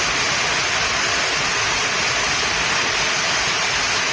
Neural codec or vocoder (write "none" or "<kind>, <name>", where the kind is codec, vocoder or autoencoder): none